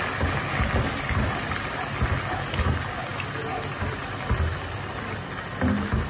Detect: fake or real real